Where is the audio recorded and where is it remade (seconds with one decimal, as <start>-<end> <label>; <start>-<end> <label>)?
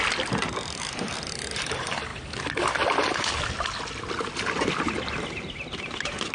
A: 0.0-6.3 recorded